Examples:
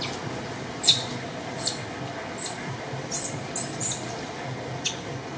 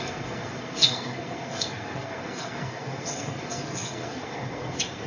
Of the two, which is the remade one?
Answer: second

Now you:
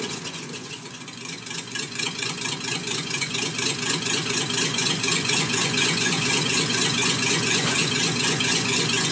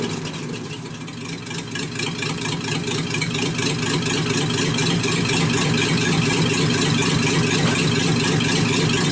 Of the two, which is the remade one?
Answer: first